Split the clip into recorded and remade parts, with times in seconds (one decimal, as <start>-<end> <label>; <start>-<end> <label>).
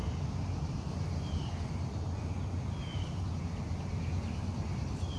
0.0-5.2 recorded